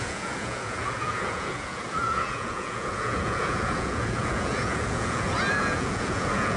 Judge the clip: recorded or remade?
remade